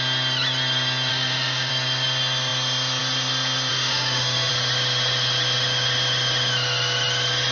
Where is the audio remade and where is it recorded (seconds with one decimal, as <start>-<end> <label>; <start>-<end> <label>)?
0.0-1.1 recorded; 1.1-1.7 remade; 1.7-3.7 recorded; 3.7-4.5 remade; 4.5-7.5 recorded